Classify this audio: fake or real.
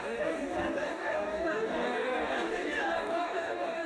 fake